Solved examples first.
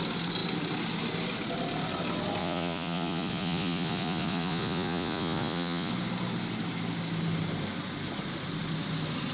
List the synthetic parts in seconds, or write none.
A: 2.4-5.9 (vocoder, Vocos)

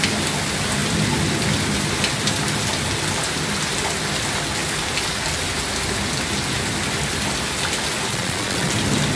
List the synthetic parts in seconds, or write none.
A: 8.1-8.7 (vocoder, Vocos)

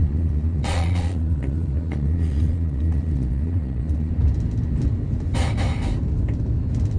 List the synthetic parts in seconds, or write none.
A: 0.0-4.1 (vocoder, Vocos)